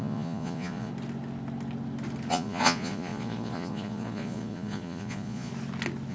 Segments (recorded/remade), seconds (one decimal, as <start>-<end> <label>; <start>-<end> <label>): 0.0-0.9 remade; 0.9-2.3 recorded; 2.3-5.5 remade; 5.5-6.1 recorded